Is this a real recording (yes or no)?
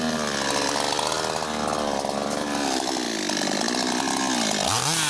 yes